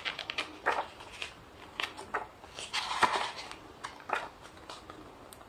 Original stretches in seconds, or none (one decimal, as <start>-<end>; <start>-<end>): 0.0-5.5